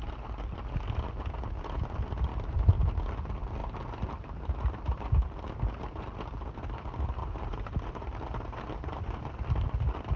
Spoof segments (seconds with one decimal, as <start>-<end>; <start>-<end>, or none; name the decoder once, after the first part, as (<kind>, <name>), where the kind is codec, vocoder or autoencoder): 2.3-2.8 (vocoder, BigVGAN v2); 7.2-9.2